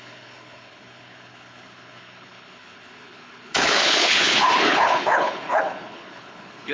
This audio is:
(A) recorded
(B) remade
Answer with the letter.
B